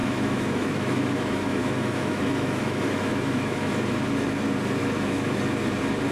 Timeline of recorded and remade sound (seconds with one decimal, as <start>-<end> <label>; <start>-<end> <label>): 0.0-3.7 remade; 3.7-4.8 recorded; 4.8-5.4 remade; 5.4-6.1 recorded